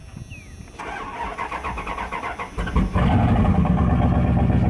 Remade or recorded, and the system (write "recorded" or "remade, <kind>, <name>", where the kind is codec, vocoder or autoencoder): recorded